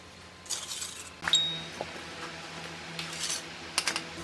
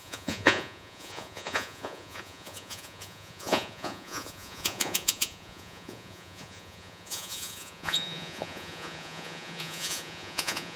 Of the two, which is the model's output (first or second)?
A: second